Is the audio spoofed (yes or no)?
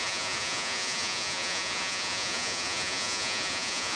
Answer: yes